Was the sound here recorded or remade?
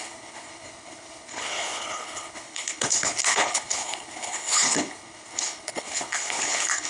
remade